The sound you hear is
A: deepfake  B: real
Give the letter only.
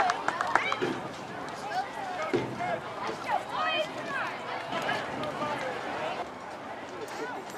B